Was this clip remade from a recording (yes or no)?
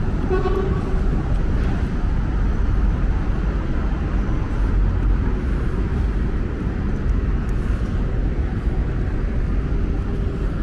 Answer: no